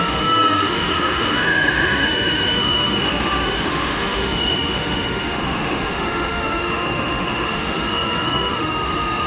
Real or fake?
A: fake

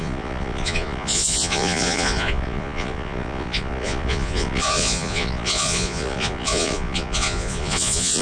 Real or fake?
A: fake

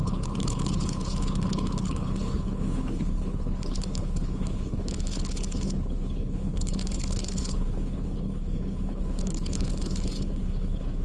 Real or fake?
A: fake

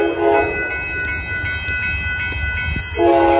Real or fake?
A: real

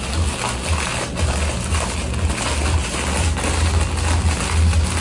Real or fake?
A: real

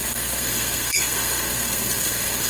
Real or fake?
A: fake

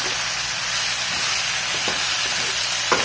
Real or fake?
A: real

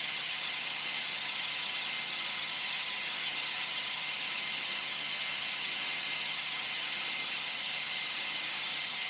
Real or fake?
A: fake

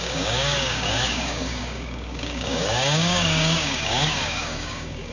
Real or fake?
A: fake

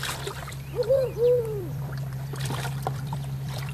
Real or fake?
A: fake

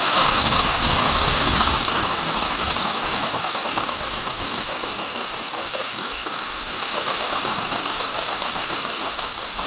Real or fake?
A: fake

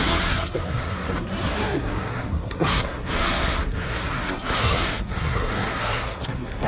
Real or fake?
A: fake